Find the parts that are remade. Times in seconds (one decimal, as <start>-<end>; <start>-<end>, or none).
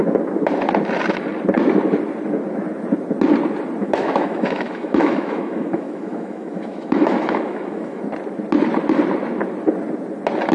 3.8-8.0